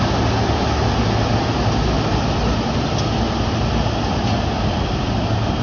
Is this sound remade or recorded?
recorded